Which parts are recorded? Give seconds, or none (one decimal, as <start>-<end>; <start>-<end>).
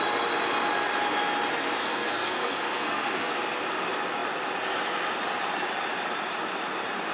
0.0-1.8; 3.3-7.1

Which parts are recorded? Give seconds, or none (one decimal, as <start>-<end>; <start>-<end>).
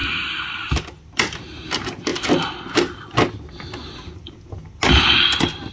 0.0-5.7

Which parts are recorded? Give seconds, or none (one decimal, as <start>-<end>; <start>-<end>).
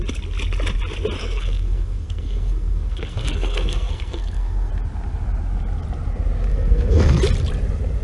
0.0-1.2; 4.7-6.5; 7.2-8.0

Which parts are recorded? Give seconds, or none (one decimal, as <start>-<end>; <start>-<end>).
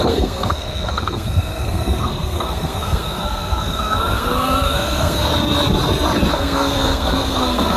5.3-6.3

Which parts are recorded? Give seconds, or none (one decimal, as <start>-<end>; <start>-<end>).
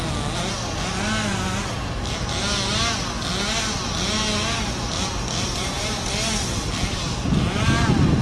0.0-5.5; 6.1-8.2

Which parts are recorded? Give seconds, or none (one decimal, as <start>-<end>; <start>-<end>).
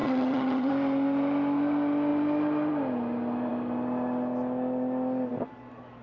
0.7-6.0